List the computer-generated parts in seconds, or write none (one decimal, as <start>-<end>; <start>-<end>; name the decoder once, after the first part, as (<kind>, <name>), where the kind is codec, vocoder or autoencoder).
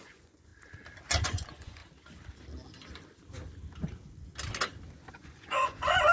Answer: 0.0-0.5 (vocoder, Vocos); 1.2-1.8; 5.1-6.1